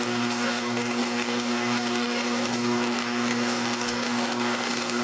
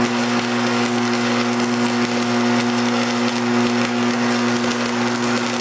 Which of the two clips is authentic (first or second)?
second